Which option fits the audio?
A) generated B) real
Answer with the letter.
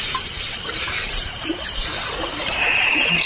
A